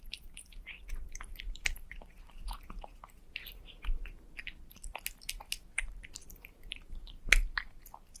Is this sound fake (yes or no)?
yes